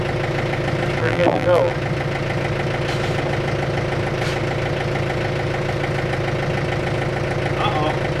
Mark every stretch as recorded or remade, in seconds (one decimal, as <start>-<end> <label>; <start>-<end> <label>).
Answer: 0.0-1.0 recorded; 1.0-1.7 remade; 1.7-8.2 recorded